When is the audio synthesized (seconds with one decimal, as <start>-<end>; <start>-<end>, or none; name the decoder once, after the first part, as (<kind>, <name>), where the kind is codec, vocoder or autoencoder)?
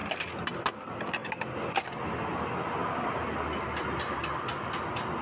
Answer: none